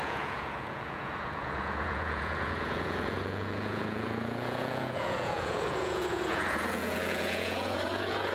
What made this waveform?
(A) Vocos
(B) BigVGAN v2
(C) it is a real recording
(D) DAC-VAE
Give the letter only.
A